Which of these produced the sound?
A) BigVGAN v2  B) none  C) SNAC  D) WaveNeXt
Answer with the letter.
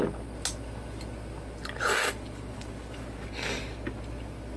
B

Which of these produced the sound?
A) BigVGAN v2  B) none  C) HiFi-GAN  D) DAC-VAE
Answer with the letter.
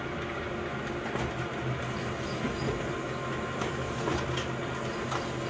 B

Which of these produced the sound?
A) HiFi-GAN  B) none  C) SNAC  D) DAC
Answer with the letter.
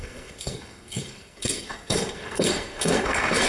C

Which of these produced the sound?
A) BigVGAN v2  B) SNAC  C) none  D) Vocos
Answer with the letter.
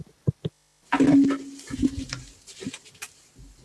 C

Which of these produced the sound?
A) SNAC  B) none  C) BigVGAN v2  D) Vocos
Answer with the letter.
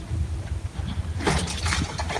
B